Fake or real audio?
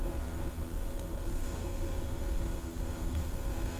fake